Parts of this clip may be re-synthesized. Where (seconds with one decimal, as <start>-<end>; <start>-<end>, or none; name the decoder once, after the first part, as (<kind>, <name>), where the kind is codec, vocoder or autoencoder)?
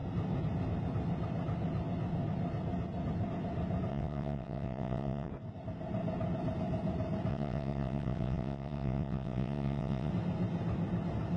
3.9-5.3 (vocoder, WaveNeXt); 7.3-10.1